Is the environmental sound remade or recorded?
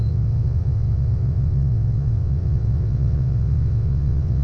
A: remade